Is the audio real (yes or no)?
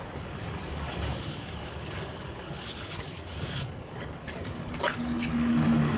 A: no